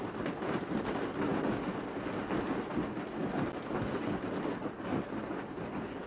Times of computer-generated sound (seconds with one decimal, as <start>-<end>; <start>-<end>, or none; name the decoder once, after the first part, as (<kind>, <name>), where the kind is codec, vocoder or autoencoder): none